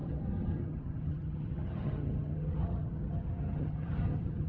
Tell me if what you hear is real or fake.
fake